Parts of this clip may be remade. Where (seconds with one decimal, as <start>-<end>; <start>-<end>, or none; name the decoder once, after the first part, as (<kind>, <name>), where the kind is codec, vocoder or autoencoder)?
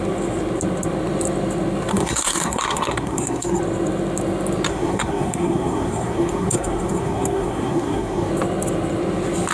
1.9-3.6 (codec, SNAC); 4.7-8.3